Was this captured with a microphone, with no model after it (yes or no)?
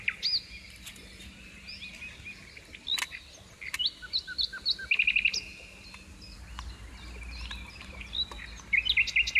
yes